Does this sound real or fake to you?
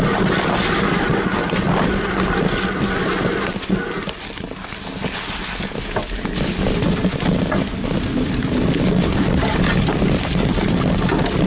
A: real